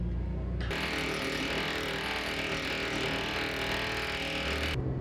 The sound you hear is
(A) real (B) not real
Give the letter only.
A